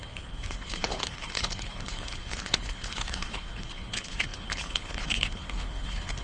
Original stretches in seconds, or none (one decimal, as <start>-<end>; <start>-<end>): none

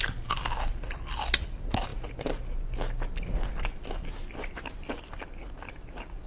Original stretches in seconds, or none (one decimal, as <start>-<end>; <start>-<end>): 0.0-6.3

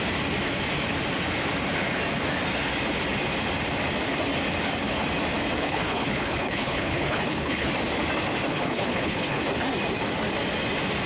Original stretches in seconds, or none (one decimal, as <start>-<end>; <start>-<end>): 0.0-5.6; 7.7-8.5; 9.4-11.1

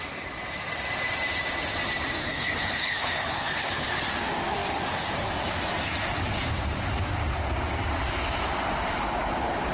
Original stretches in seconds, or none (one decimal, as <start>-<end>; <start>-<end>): 0.0-2.2; 4.0-9.7

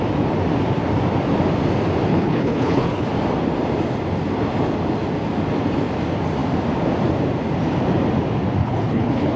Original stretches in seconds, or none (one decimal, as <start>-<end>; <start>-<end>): 0.0-2.1; 3.1-8.6